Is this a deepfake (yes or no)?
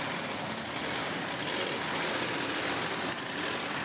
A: yes